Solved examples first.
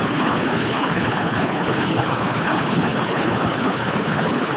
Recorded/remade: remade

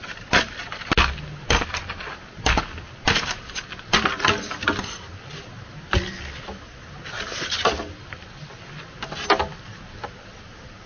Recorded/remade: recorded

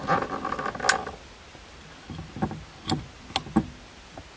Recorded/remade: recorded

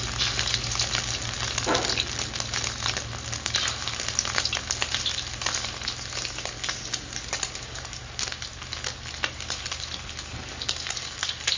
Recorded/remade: recorded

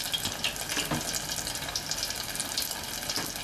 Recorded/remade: recorded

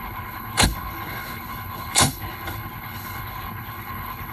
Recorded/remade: remade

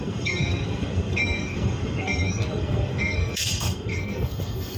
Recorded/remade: remade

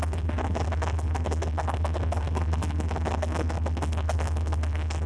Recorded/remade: remade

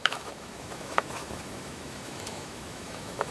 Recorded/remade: remade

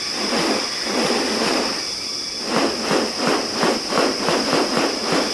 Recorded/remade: recorded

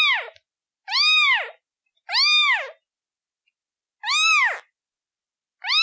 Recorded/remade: recorded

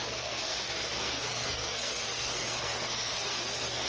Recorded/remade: remade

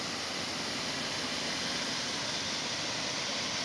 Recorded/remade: recorded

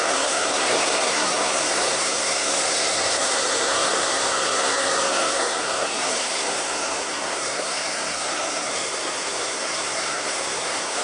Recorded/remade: remade